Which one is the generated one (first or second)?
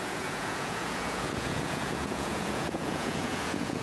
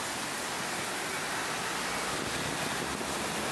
first